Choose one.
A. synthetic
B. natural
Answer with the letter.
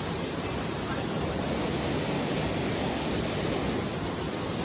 B